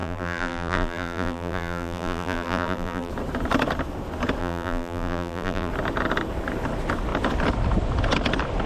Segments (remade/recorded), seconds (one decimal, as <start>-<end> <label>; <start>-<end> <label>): 0.0-3.1 remade; 3.1-4.4 recorded; 4.4-5.7 remade; 5.7-8.7 recorded